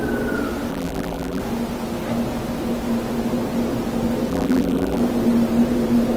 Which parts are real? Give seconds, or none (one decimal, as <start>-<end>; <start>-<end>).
0.0-0.7; 1.4-4.3; 5.0-6.2